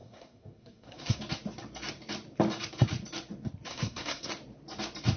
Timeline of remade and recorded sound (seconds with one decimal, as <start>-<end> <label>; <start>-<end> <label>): 0.0-1.2 remade; 1.2-3.7 recorded; 3.7-4.3 remade; 4.3-5.2 recorded